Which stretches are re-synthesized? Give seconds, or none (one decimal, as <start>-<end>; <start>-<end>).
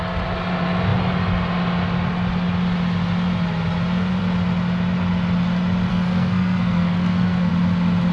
5.9-7.5